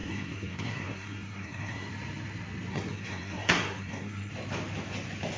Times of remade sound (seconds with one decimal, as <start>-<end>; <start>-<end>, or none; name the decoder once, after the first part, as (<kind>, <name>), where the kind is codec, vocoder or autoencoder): 0.0-1.9 (codec, SNAC); 2.7-4.3